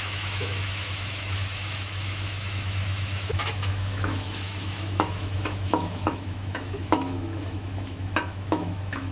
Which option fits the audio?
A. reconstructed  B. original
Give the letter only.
A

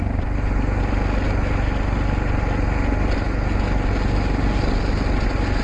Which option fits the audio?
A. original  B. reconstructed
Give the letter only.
A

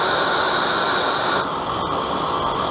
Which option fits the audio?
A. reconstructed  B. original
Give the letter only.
B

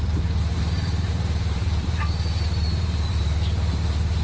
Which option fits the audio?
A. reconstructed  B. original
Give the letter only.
A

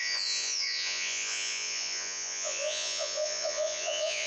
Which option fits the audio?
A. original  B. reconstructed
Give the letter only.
B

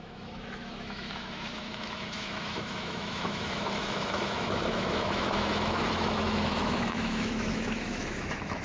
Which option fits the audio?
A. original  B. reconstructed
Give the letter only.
B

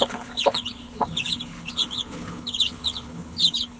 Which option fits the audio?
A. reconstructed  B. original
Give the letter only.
A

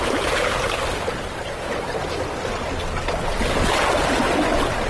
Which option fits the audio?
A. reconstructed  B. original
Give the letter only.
B